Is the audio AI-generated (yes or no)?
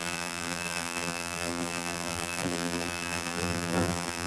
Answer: yes